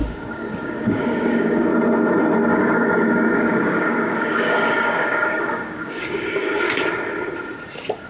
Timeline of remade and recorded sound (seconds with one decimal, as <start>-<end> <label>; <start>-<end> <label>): 0.0-1.7 remade; 1.7-2.5 recorded; 2.5-6.5 remade; 6.5-8.1 recorded